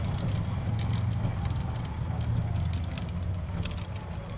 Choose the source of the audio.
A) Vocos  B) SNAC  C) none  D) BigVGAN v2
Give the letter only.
C